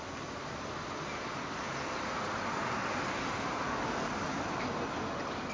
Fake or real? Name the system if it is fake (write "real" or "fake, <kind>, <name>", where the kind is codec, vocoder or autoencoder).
real